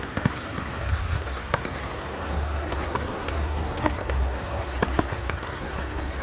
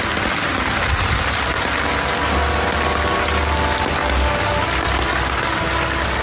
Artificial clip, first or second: first